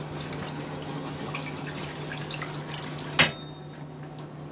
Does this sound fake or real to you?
real